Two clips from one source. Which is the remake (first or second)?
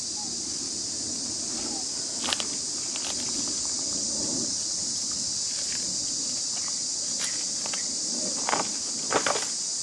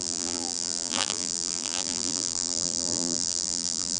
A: second